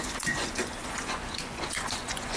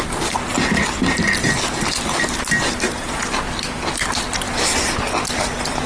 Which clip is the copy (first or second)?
first